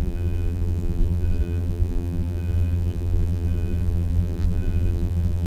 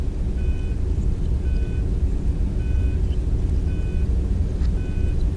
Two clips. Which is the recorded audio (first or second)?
second